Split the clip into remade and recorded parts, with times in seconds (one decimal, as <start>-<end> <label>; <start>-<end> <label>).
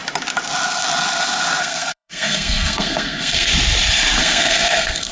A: 0.0-1.6 recorded; 1.6-3.5 remade; 3.5-4.2 recorded; 4.2-5.1 remade